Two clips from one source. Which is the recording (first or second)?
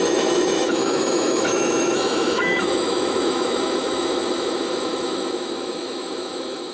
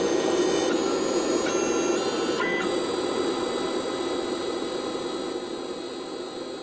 second